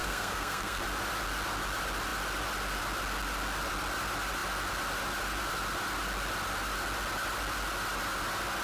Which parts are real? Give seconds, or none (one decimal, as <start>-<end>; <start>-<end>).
0.8-8.6